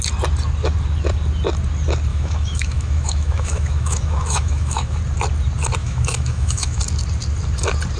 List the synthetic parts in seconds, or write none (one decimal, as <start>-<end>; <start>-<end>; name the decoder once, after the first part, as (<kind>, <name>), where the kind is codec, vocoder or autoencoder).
2.1-5.0 (autoencoder, DAC-VAE); 5.8-6.8